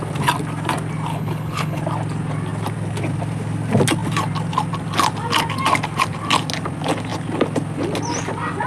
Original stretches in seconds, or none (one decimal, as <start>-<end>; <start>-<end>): 0.0-1.1; 1.8-8.7